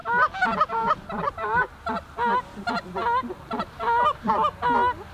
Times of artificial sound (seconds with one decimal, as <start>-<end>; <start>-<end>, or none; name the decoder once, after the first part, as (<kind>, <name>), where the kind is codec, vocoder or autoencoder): 0.7-1.6 (vocoder, BigVGAN v2)